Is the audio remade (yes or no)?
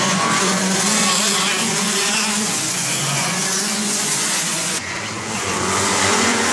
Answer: yes